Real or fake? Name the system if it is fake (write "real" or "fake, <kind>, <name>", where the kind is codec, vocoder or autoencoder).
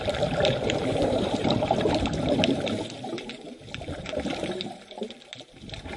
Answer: fake, vocoder, BigVGAN v2